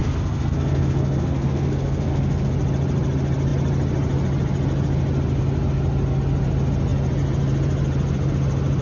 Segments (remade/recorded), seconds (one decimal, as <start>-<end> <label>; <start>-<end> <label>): 0.0-2.5 remade; 2.5-8.8 recorded